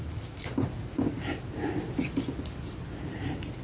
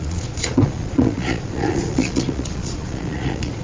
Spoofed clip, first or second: second